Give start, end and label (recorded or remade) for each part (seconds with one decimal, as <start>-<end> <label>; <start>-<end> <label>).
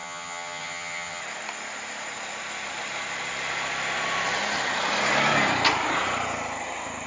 0.0-1.2 remade; 1.2-7.1 recorded